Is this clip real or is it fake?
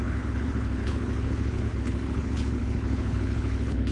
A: fake